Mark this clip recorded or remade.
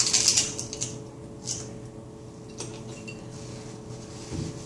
recorded